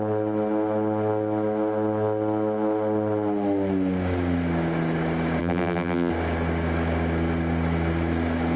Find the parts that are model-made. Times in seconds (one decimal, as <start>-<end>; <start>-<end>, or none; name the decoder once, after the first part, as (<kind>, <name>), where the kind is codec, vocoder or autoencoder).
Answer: 5.4-6.1 (vocoder, BigVGAN v2)